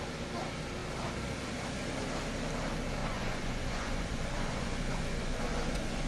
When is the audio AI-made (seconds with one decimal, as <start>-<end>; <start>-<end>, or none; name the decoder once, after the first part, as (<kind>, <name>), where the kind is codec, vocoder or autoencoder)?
3.0-6.1 (vocoder, Vocos)